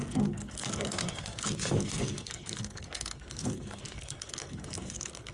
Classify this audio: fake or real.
fake